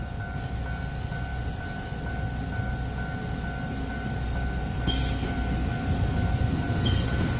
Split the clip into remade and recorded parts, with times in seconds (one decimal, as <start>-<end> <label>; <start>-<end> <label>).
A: 0.0-7.4 recorded